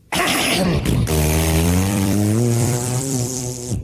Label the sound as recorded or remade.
remade